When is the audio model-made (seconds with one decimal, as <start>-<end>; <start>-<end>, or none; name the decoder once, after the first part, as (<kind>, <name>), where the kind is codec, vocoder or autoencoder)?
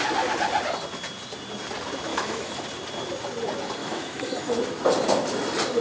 2.1-2.6 (autoencoder, DAC-VAE); 3.8-4.6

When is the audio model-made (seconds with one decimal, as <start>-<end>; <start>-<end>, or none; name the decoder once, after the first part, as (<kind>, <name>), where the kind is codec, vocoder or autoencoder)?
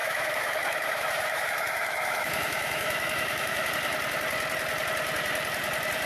0.0-3.7 (autoencoder, DAC-VAE)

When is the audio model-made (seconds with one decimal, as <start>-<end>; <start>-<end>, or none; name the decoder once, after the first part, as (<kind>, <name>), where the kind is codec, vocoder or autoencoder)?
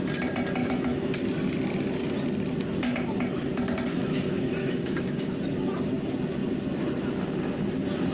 0.6-1.1 (autoencoder, DAC-VAE); 3.9-5.3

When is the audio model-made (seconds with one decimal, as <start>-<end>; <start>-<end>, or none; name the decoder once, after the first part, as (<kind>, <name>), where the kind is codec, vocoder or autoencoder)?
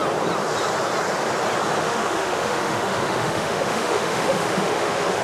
1.8-5.2 (autoencoder, DAC-VAE)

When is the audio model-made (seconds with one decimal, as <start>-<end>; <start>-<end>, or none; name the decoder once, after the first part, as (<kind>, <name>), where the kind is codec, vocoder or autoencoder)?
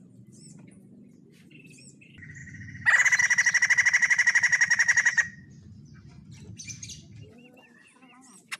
4.0-5.2 (autoencoder, DAC-VAE)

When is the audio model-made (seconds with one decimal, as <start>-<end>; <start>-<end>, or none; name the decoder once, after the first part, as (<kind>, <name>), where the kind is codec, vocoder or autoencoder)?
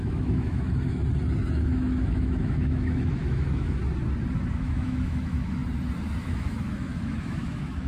0.0-1.0 (autoencoder, DAC-VAE); 1.6-3.8; 4.5-5.6; 6.2-7.9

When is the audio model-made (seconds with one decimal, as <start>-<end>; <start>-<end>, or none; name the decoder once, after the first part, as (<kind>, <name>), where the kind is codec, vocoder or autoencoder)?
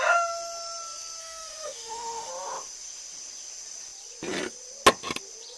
1.2-2.3 (autoencoder, DAC-VAE)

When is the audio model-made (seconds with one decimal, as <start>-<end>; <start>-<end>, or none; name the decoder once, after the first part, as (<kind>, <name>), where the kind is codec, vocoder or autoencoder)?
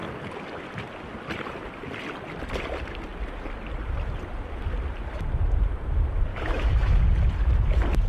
6.3-7.0 (autoencoder, DAC-VAE)